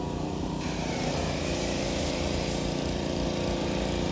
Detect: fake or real fake